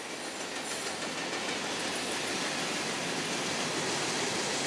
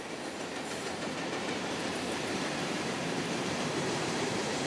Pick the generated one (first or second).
second